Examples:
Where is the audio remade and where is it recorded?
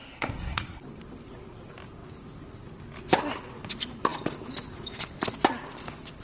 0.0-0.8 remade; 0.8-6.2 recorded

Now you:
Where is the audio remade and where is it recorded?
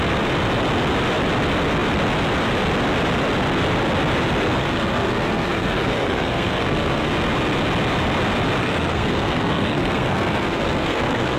0.0-4.6 recorded; 4.6-7.1 remade; 7.1-8.6 recorded; 8.6-11.4 remade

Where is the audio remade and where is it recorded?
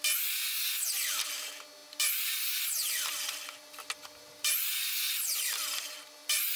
0.0-6.6 recorded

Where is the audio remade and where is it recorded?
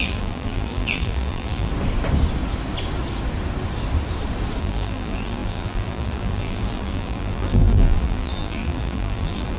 0.0-1.7 remade; 1.7-4.6 recorded; 4.6-9.6 remade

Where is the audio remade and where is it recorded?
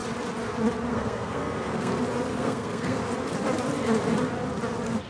0.0-0.9 recorded; 0.9-1.9 remade; 1.9-2.3 recorded; 2.3-3.0 remade; 3.0-5.1 recorded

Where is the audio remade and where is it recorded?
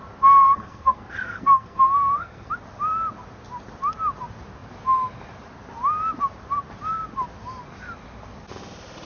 0.0-0.4 recorded; 0.4-2.5 remade; 2.5-9.0 recorded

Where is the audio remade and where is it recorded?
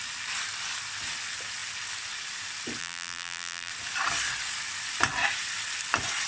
0.0-2.8 recorded; 2.8-3.7 remade; 3.7-6.3 recorded